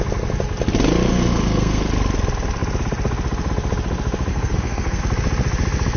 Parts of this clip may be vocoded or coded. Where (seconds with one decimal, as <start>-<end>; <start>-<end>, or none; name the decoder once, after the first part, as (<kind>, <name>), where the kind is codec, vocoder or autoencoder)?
1.1-1.8 (codec, SNAC); 4.3-5.0